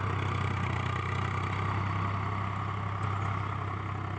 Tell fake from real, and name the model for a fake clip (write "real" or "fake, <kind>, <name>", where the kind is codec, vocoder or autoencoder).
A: real